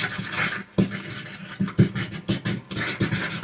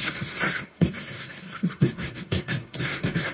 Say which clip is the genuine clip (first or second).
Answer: first